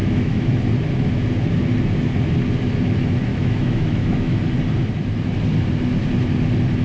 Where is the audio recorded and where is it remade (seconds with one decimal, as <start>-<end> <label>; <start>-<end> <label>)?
0.0-0.5 remade; 0.5-3.3 recorded; 3.3-4.4 remade; 4.4-6.8 recorded